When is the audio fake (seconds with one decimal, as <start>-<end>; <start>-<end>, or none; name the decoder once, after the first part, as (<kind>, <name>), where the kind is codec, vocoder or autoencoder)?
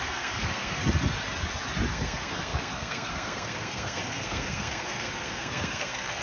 0.0-0.8 (codec, SNAC); 1.9-6.2